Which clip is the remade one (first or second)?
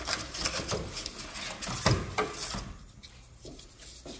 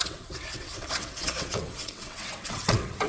second